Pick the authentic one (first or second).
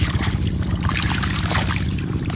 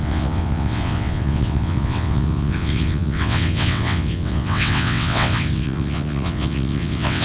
first